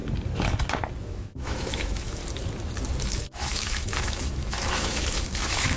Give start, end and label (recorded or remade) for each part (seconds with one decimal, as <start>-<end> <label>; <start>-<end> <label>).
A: 0.0-1.0 recorded; 1.0-2.2 remade; 2.2-3.0 recorded; 3.0-5.8 remade